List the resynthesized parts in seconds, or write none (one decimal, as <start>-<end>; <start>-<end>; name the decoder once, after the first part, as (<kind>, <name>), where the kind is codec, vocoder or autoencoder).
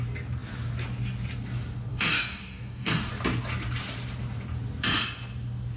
1.9-3.1 (codec, DAC)